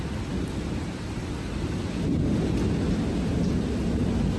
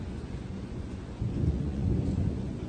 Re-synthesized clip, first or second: second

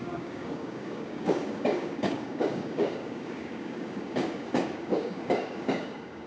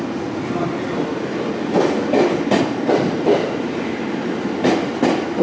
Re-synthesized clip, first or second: first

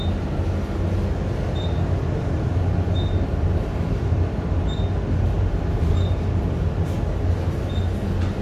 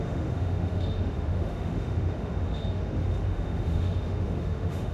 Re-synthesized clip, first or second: second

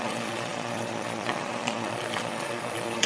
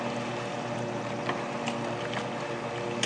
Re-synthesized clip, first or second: first